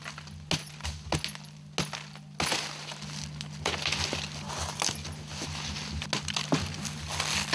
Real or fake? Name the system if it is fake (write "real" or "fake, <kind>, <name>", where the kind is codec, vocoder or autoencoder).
real